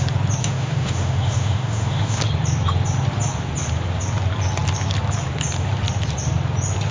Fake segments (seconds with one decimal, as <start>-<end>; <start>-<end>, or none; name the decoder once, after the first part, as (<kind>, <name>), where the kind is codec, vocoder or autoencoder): 0.4-2.2 (autoencoder, DAC-VAE)